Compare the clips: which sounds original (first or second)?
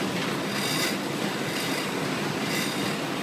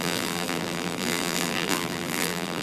first